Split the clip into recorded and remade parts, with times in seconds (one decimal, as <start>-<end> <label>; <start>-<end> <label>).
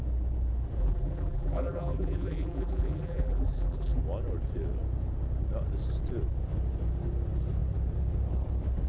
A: 0.0-0.8 recorded; 0.8-4.0 remade; 4.0-8.9 recorded